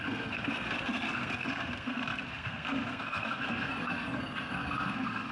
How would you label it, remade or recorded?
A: remade